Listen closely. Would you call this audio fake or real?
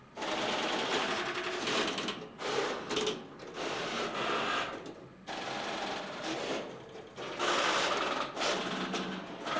real